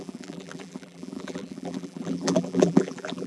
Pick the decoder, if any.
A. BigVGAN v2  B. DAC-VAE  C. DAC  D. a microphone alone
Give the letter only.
A